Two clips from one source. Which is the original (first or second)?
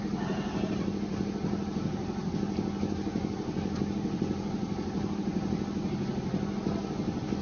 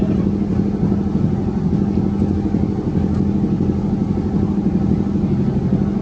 second